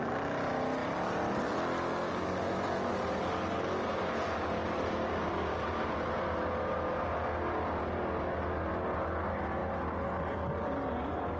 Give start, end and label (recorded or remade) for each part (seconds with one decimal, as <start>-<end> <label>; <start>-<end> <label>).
0.0-0.8 recorded; 0.8-2.1 remade; 2.1-4.6 recorded; 4.6-5.2 remade; 5.2-11.4 recorded